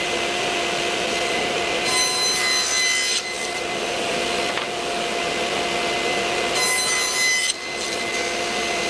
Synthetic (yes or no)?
no